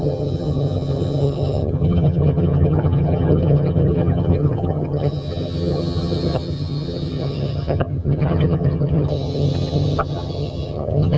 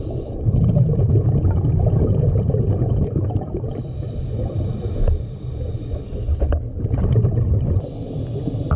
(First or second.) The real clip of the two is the second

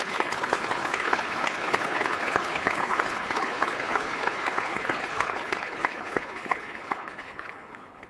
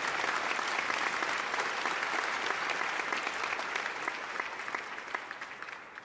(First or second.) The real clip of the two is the second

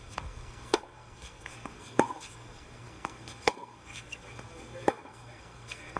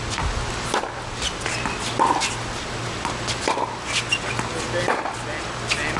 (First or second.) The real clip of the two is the second